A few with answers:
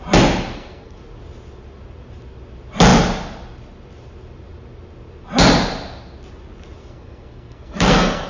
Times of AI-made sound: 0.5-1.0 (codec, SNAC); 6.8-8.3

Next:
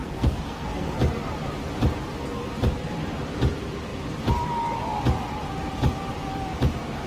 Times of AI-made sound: 0.0-1.0 (codec, SNAC)

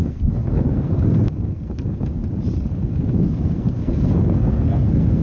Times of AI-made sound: 0.0-2.2 (codec, SNAC); 2.8-5.2

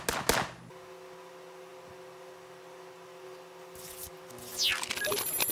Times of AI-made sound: none

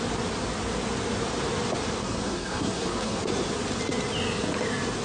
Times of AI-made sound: 2.0-3.2 (codec, SNAC)

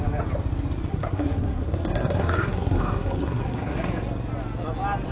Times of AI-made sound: 0.9-3.9 (codec, SNAC)